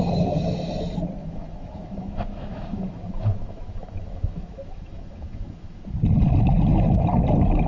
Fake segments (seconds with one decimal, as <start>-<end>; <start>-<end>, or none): 1.2-5.8